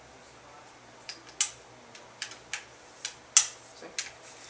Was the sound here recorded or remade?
recorded